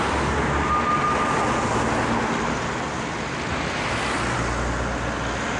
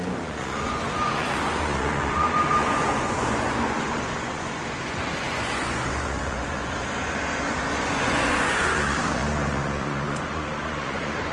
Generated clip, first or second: second